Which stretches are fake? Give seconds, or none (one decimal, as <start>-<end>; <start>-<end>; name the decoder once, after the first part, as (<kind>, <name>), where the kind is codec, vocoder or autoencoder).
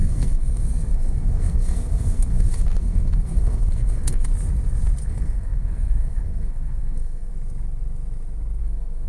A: 0.0-4.3 (codec, SNAC); 5.0-7.3; 8.6-9.1